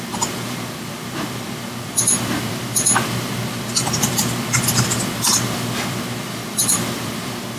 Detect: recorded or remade remade